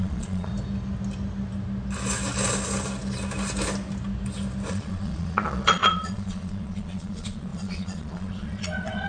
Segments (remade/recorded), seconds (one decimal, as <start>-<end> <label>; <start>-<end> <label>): 0.0-0.5 remade; 0.5-4.7 recorded; 4.7-9.1 remade